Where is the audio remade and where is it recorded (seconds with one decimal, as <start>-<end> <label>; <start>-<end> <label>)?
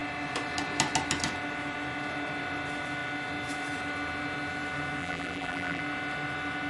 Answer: 0.0-5.0 recorded; 5.0-5.8 remade; 5.8-6.7 recorded